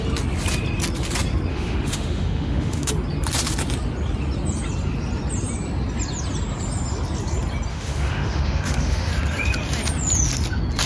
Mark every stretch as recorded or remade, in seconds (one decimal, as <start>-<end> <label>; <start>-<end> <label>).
0.0-1.5 recorded; 1.5-2.9 remade; 2.9-7.7 recorded; 7.7-9.1 remade; 9.1-10.9 recorded